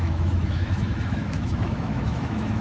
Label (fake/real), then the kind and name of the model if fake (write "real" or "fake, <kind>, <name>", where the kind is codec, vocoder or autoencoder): fake, autoencoder, DAC-VAE